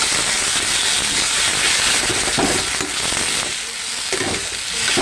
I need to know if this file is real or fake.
real